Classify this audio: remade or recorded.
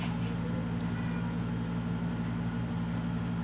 recorded